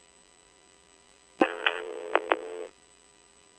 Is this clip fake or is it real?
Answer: fake